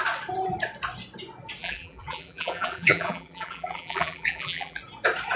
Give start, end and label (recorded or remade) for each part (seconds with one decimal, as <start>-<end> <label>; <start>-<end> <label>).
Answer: 0.0-1.6 recorded; 1.6-4.8 remade; 4.8-5.4 recorded